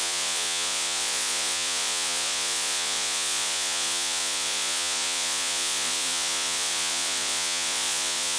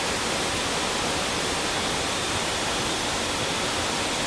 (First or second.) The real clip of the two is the second